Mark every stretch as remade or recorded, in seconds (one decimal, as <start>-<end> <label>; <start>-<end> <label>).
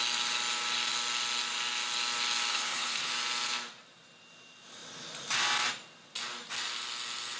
0.0-2.5 recorded; 2.5-3.1 remade; 3.1-7.4 recorded